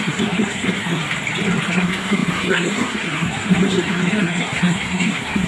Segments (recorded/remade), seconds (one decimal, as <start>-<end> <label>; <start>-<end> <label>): 0.0-1.0 remade; 1.0-1.7 recorded; 1.7-5.5 remade